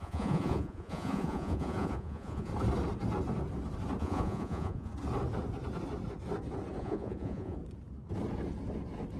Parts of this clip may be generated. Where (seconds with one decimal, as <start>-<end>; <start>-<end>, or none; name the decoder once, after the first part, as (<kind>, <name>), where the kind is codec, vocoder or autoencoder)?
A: 0.0-2.5 (vocoder, Vocos); 4.0-4.9; 6.8-7.6